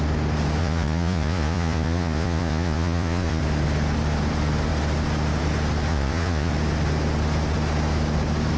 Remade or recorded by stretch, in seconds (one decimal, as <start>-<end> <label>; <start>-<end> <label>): 0.0-0.6 recorded; 0.6-3.4 remade; 3.4-5.9 recorded; 5.9-6.5 remade; 6.5-8.6 recorded

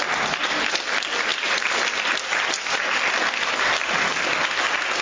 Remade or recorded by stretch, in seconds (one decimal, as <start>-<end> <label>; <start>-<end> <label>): 0.0-5.0 recorded